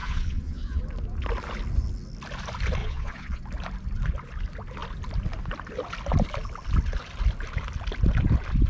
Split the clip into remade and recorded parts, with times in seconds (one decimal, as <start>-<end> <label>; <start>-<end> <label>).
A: 0.0-0.8 remade; 0.8-2.8 recorded; 2.8-3.4 remade; 3.4-8.7 recorded